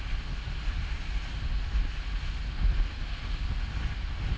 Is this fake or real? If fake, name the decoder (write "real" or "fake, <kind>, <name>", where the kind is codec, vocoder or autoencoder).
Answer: real